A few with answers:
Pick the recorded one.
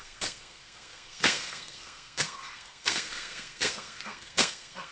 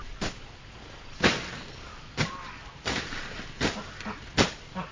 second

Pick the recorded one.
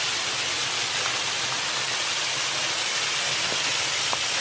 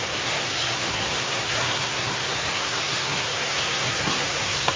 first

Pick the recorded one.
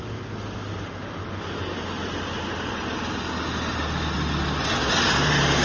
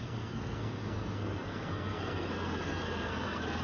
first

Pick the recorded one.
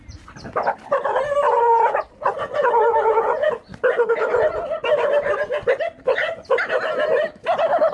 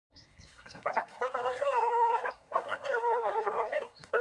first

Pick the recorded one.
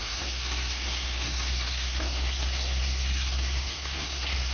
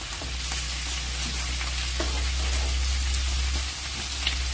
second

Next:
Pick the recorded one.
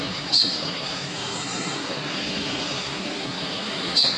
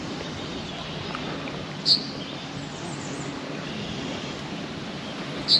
second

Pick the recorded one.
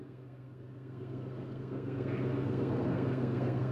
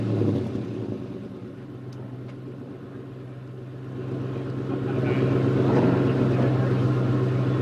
second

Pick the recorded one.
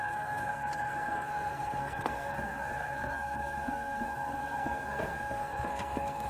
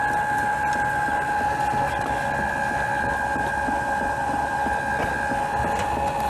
second